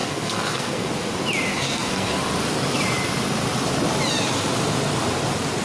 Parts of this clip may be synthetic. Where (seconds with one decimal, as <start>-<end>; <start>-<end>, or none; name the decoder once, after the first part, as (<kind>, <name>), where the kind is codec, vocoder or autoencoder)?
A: 0.0-0.9 (codec, SNAC); 1.5-2.2